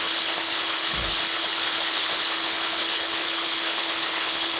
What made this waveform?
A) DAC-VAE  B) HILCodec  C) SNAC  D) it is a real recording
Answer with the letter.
B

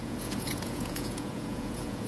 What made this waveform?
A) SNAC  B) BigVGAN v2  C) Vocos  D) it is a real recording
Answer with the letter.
C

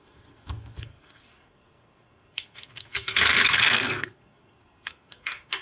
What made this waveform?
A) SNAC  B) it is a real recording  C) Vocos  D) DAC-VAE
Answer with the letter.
A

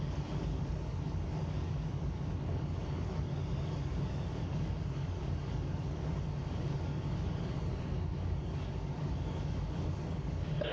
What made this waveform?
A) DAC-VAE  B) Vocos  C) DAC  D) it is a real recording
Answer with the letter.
C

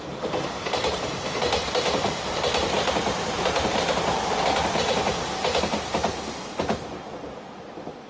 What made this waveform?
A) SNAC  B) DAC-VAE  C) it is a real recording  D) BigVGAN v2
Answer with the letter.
C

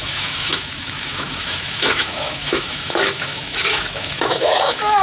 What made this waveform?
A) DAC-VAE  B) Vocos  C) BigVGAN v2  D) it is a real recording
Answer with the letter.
A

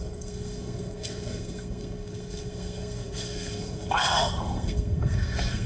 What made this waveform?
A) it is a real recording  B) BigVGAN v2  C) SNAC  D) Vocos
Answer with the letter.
C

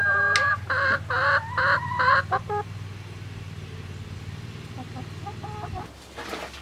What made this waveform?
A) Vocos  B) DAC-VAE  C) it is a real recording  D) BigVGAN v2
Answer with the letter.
C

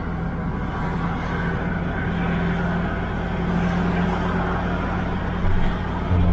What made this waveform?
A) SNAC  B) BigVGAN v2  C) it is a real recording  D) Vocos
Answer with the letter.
C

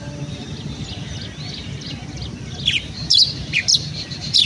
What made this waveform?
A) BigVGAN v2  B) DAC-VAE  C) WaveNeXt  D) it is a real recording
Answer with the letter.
D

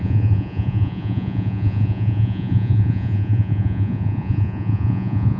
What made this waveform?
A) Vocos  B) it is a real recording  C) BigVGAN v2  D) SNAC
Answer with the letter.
A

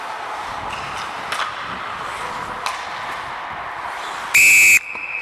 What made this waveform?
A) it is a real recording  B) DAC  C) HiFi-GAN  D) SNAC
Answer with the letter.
A